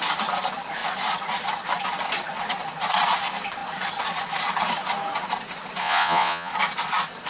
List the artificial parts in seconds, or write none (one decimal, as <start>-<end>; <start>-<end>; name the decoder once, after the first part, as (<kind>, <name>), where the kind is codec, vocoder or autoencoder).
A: 5.8-6.5 (vocoder, Vocos)